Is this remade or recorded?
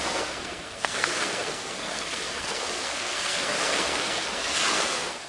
remade